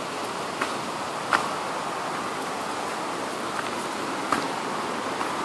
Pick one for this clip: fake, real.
real